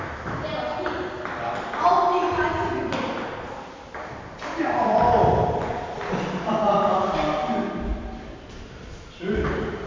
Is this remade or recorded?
recorded